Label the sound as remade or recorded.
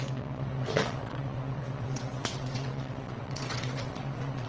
remade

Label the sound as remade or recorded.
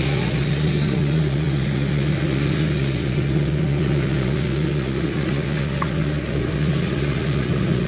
remade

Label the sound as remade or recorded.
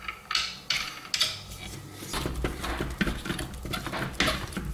recorded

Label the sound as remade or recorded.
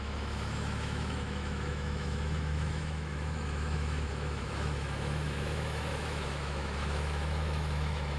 remade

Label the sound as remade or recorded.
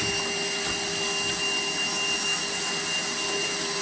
recorded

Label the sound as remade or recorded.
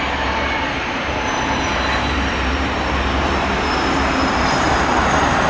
remade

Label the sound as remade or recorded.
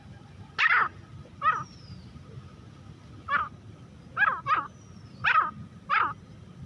recorded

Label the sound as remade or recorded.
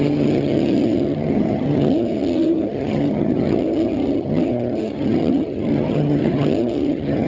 remade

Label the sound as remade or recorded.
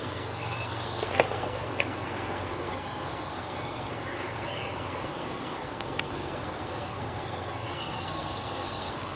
remade